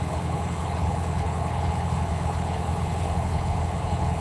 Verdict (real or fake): fake